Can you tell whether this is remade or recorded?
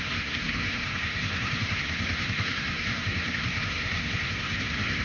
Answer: remade